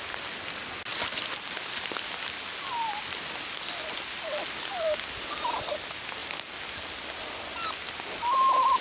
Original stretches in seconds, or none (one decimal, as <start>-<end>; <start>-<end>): 0.0-8.8